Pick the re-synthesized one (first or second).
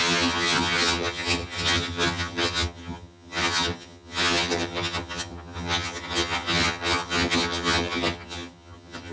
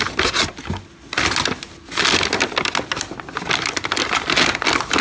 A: first